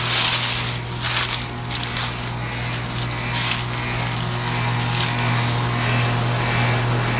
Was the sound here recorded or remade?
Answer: recorded